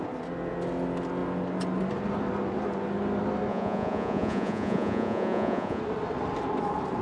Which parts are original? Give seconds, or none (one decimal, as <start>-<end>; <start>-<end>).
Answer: 0.0-3.5; 5.8-7.0

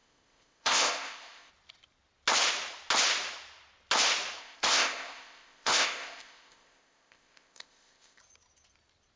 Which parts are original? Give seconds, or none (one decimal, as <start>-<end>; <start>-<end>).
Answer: 1.5-4.4; 8.2-9.2